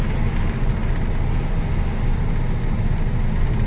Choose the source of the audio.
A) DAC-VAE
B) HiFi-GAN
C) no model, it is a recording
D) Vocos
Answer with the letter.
C